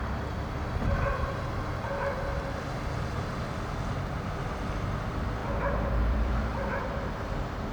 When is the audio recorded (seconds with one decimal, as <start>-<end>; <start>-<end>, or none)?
0.0-5.4; 6.8-7.7